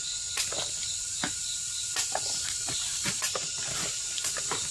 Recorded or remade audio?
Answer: recorded